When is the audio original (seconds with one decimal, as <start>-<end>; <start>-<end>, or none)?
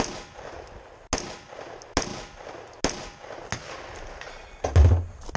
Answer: 0.0-5.4